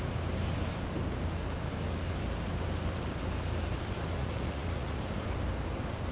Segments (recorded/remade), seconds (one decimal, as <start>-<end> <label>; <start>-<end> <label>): 0.0-4.2 recorded; 4.2-5.0 remade; 5.0-6.1 recorded